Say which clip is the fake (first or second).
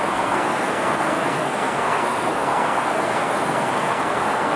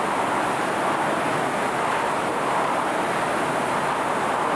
first